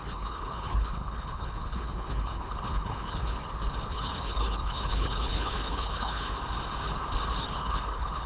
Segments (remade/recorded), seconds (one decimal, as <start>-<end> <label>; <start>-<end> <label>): 0.0-3.2 remade; 3.2-3.9 recorded; 3.9-6.3 remade; 6.3-7.5 recorded; 7.5-8.3 remade